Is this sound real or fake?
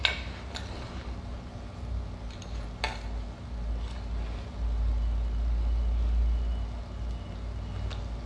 real